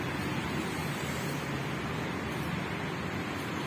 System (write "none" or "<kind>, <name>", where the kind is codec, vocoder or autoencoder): none